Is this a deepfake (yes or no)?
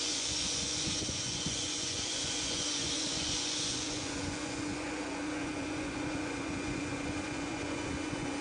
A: yes